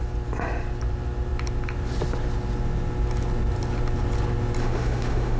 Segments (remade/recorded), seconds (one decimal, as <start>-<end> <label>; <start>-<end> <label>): 0.0-4.6 recorded; 4.6-5.4 remade